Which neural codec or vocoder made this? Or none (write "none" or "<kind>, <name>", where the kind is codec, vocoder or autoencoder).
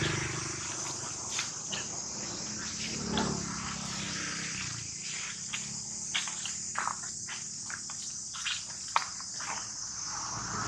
none